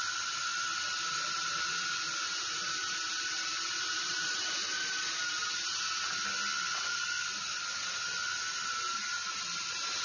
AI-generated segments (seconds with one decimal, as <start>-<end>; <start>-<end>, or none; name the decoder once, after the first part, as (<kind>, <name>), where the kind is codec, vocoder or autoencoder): 0.5-5.8 (vocoder, BigVGAN v2); 8.7-9.3